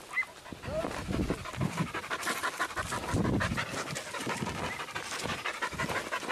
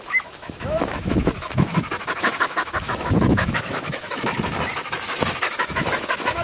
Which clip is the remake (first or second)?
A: second